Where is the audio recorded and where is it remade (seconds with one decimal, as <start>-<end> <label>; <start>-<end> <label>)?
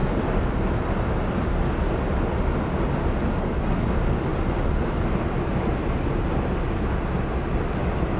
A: 0.0-8.2 recorded